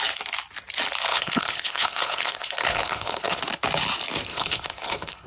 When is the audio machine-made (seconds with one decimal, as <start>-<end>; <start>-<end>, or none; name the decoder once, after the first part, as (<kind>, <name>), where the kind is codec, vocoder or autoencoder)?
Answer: 1.1-3.4 (codec, HILCodec); 4.3-5.3